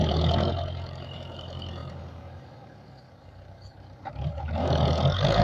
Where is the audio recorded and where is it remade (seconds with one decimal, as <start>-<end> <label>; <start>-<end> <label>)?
0.0-5.4 remade

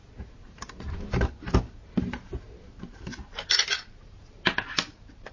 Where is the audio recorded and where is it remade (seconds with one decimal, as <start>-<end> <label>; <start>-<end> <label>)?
0.0-2.0 recorded; 2.0-3.1 remade; 3.1-3.9 recorded; 3.9-5.3 remade

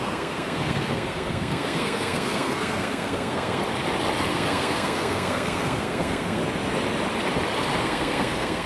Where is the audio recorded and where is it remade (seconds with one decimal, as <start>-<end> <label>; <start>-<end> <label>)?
0.0-3.6 remade; 3.6-4.3 recorded; 4.3-6.4 remade; 6.4-7.8 recorded; 7.8-8.7 remade

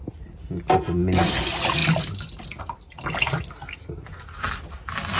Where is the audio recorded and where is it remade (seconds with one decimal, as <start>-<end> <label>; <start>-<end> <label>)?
0.0-5.2 recorded

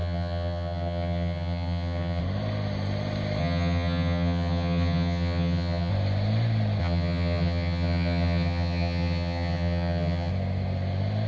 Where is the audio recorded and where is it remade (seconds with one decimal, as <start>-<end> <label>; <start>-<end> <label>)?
0.0-2.2 remade; 2.2-3.4 recorded; 3.4-5.9 remade; 5.9-6.8 recorded; 6.8-10.3 remade; 10.3-11.3 recorded

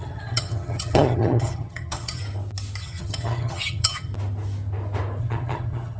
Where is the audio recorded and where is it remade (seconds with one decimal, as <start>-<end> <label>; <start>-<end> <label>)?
0.0-2.2 remade; 2.2-2.8 recorded; 2.8-4.1 remade; 4.1-5.2 recorded; 5.2-6.0 remade